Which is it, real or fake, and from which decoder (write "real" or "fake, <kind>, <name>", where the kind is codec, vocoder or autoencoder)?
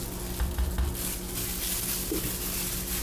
real